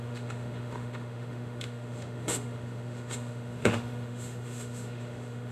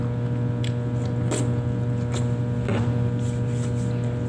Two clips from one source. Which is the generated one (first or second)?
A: first